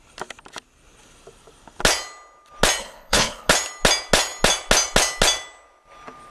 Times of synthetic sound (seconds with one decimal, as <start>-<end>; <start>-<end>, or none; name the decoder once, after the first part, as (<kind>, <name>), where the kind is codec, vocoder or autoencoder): 2.8-3.5 (codec, HILCodec)